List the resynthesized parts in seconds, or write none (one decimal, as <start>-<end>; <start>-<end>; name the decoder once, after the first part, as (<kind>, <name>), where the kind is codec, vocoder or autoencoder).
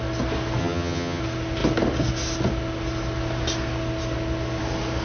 0.6-1.2 (vocoder, HiFi-GAN)